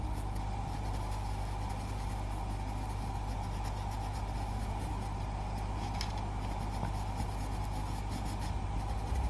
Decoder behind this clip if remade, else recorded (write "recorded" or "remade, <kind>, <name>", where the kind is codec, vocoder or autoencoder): recorded